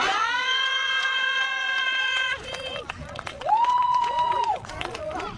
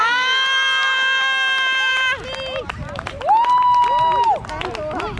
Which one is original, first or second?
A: second